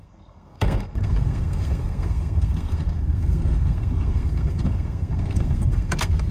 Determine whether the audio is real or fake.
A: fake